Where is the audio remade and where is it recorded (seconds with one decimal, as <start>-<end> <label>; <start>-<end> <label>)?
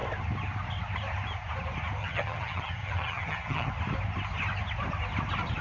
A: 0.0-2.0 recorded; 2.0-3.7 remade; 3.7-5.6 recorded